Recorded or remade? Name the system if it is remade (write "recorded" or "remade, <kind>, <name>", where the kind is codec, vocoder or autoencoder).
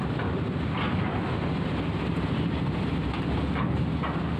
recorded